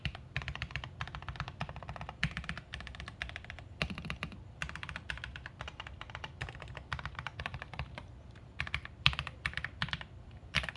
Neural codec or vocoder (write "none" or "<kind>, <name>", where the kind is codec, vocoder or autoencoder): vocoder, BigVGAN v2